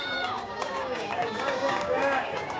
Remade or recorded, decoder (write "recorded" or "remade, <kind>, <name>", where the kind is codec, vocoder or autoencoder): remade, codec, DAC